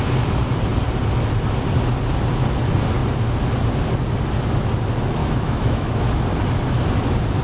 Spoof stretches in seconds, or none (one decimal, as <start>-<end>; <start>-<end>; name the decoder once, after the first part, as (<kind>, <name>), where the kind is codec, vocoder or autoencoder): 5.2-6.0 (autoencoder, DAC-VAE)